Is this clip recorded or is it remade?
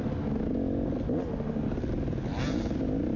recorded